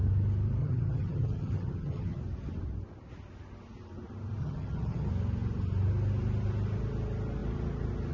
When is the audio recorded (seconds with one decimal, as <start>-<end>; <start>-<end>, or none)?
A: 0.0-0.6; 2.2-4.4; 5.1-8.1